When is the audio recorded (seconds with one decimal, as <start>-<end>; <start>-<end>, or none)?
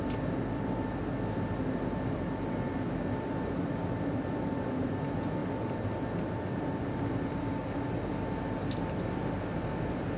0.0-10.2